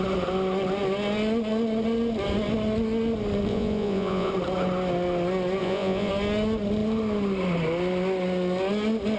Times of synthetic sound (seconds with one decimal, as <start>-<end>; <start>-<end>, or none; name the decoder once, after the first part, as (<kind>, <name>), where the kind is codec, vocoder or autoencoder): 3.5-4.3 (vocoder, Vocos); 5.6-6.1